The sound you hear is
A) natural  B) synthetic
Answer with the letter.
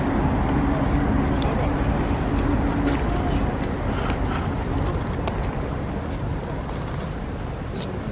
A